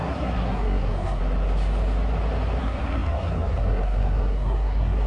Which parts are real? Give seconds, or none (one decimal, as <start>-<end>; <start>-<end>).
1.2-2.6